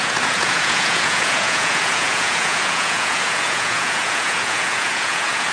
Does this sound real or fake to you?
fake